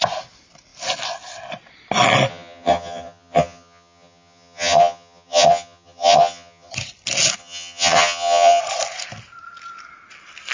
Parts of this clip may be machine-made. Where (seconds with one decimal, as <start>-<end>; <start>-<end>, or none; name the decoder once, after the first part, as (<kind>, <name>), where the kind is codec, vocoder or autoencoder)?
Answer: 2.3-6.7 (vocoder, HiFi-GAN); 7.4-8.6